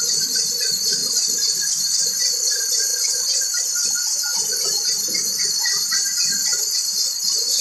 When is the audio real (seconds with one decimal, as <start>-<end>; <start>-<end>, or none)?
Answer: 1.0-1.7; 2.9-3.6; 4.3-5.2